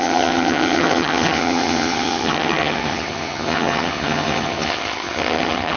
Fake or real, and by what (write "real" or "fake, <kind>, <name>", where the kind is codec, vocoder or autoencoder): fake, vocoder, HiFi-GAN